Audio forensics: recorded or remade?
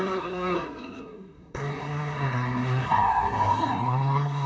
remade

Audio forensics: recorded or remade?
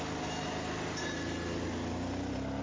recorded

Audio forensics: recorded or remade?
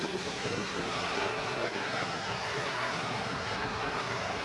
remade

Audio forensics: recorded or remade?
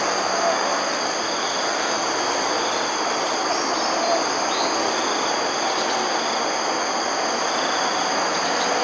recorded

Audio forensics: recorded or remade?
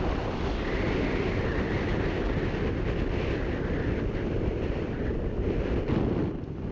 recorded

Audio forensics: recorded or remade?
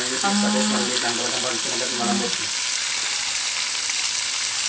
recorded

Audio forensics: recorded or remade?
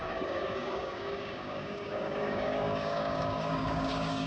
remade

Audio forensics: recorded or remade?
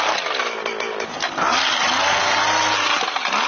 recorded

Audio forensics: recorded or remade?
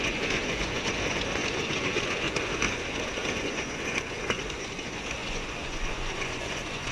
remade